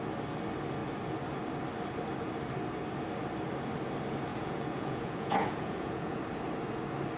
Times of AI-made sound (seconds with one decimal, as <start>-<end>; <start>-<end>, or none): 4.3-6.2